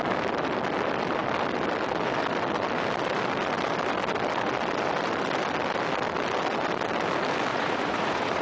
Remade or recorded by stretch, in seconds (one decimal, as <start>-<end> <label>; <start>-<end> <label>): 0.0-7.5 recorded; 7.5-8.4 remade